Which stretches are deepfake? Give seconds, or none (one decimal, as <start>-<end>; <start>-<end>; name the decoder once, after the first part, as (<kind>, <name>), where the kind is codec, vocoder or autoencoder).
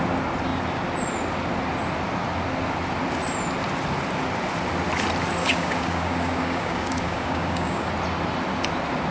5.4-7.9 (codec, DAC)